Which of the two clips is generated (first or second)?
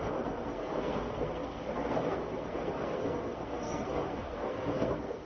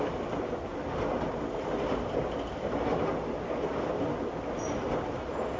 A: first